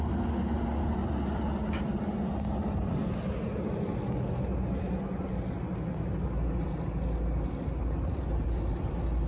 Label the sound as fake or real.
real